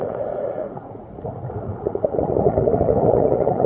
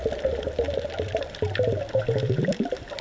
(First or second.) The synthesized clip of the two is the first